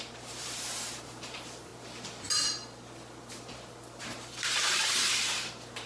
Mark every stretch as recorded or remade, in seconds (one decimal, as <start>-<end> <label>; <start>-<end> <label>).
0.0-1.7 remade; 1.7-4.0 recorded; 4.0-5.9 remade